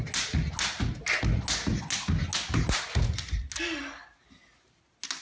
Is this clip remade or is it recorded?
recorded